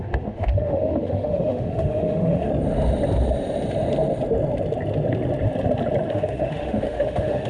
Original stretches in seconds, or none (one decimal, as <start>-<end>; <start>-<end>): 2.5-6.1